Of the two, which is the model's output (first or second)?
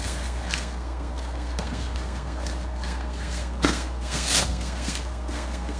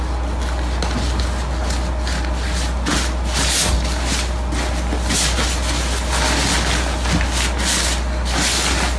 first